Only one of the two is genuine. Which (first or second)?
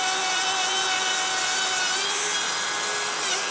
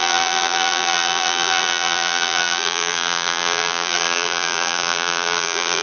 first